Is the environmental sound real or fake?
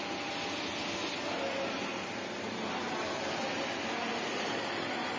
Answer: real